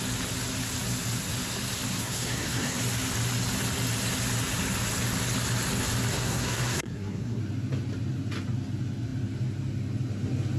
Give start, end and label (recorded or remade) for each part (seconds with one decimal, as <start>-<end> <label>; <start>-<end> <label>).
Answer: 0.0-1.9 recorded; 1.9-2.8 remade; 2.8-6.1 recorded; 6.1-7.4 remade; 7.4-10.6 recorded